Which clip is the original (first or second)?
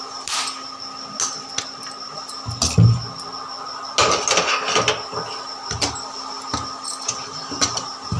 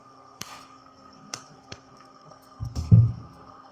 first